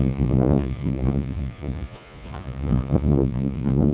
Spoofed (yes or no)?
yes